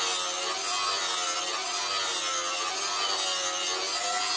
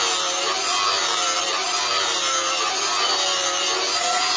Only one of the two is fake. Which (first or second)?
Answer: second